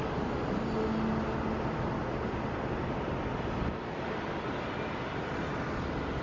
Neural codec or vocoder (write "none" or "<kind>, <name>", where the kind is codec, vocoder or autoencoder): none